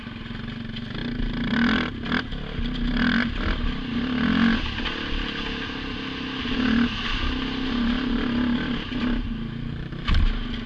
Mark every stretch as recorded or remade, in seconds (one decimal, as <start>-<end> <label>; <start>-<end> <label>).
0.0-10.7 recorded